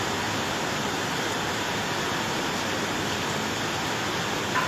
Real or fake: real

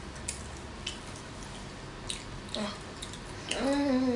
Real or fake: real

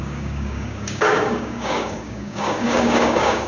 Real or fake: fake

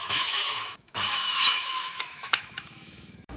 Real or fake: fake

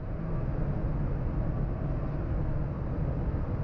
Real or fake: real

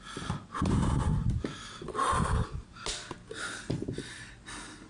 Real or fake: real